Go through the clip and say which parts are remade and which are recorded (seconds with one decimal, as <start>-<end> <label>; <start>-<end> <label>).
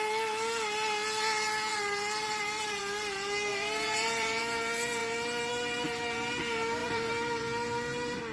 0.0-1.7 recorded; 1.7-2.8 remade; 2.8-3.5 recorded; 3.5-4.4 remade; 4.4-6.8 recorded; 6.8-7.4 remade; 7.4-8.3 recorded